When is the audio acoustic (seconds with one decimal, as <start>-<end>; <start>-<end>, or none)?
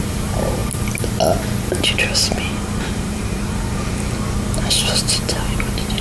0.6-2.9; 3.8-4.7